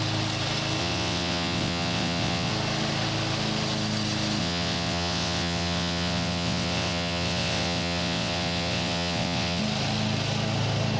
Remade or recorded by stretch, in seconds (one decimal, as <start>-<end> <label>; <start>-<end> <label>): 0.0-0.8 recorded; 0.8-2.5 remade; 2.5-4.4 recorded; 4.4-9.6 remade; 9.6-11.0 recorded